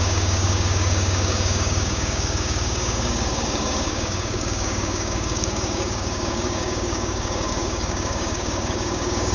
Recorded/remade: remade